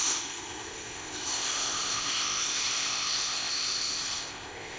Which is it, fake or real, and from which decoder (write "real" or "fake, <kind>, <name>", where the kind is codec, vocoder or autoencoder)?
fake, codec, ZipCodec